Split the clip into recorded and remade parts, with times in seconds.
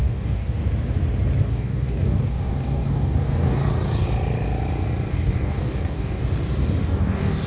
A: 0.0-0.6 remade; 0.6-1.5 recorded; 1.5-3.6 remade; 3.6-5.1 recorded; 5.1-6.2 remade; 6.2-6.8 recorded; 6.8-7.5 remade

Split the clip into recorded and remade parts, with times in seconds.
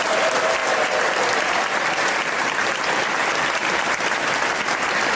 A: 0.0-0.6 recorded; 0.6-3.7 remade; 3.7-5.2 recorded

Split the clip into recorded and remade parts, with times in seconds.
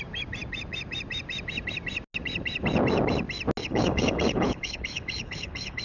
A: 0.0-3.6 recorded; 3.6-5.8 remade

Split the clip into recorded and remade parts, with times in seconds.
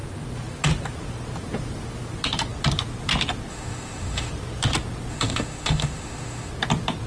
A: 0.0-3.5 recorded; 3.5-4.3 remade; 4.3-5.1 recorded; 5.1-6.5 remade; 6.5-7.1 recorded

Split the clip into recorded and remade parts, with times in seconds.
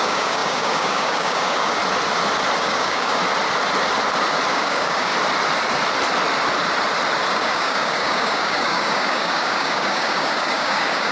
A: 0.0-1.8 remade; 1.8-2.6 recorded; 2.6-3.2 remade; 3.2-4.5 recorded; 4.5-5.1 remade; 5.1-7.3 recorded; 7.3-11.1 remade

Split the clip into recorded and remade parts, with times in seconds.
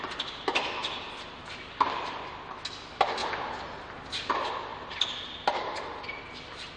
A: 0.0-6.8 recorded